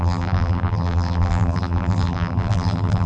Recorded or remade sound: remade